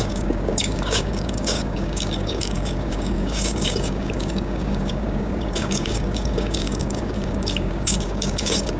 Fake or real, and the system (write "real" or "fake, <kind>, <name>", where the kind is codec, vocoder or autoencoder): fake, codec, DAC